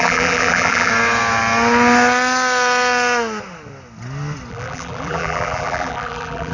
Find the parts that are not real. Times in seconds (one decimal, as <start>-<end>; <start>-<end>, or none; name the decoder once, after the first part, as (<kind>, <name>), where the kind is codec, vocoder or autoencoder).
0.0-0.9 (vocoder, BigVGAN v2); 4.5-6.5